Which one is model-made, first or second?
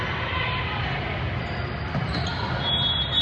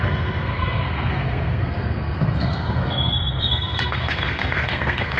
second